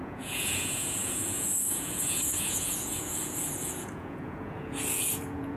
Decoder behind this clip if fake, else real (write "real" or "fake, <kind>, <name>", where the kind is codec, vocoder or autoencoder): fake, vocoder, Vocos